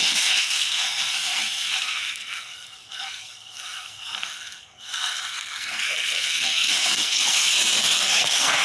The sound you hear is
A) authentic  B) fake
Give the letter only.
B